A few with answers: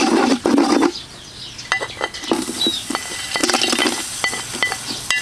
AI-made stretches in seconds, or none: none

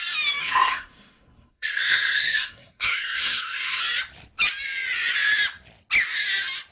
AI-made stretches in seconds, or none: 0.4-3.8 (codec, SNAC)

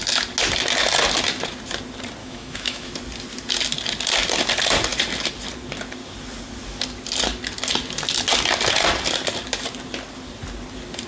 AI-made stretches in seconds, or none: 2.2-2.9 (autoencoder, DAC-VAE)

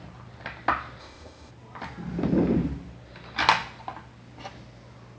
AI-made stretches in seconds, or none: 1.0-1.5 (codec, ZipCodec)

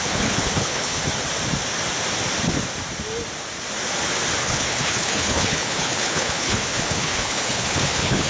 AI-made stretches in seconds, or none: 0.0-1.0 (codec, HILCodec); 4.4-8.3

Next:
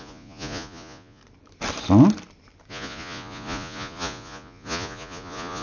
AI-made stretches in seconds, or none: 0.0-1.2 (vocoder, Vocos); 2.7-5.6

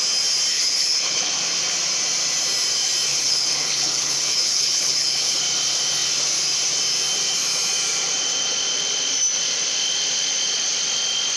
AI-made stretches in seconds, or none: 0.5-1.3 (codec, HILCodec); 3.1-5.4